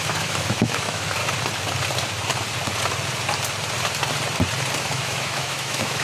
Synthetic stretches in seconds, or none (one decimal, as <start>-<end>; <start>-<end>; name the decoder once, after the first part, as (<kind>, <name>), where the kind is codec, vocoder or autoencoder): 0.0-1.2 (autoencoder, DAC-VAE); 4.8-6.0